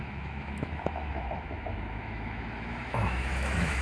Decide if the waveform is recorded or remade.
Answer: remade